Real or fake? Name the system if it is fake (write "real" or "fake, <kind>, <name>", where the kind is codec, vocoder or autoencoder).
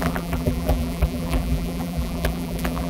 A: fake, vocoder, BigVGAN v2